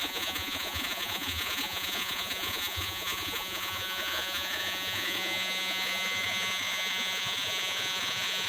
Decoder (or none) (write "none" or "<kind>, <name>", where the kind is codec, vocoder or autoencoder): vocoder, Vocos